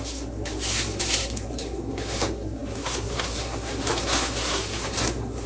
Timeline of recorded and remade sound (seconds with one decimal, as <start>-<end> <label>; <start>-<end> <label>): 0.0-5.5 remade